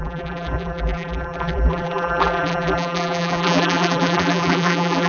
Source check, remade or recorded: remade